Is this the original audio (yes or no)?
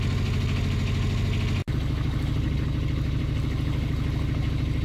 yes